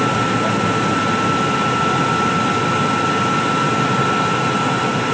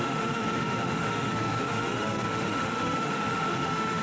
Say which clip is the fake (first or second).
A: second